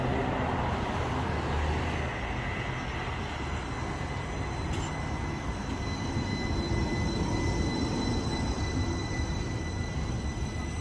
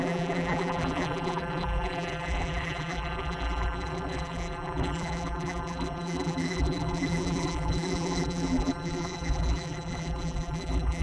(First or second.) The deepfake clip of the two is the second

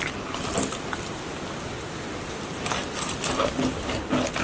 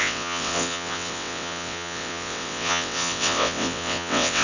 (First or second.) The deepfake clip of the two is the second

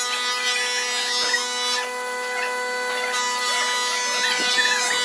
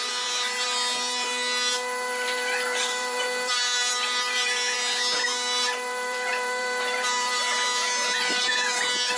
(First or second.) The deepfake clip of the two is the second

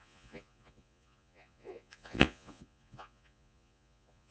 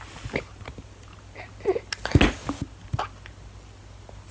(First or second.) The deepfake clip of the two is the first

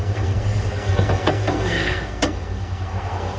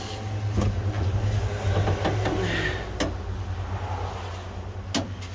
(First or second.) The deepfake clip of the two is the first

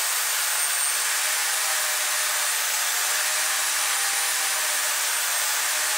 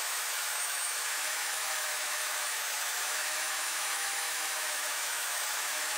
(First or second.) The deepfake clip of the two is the second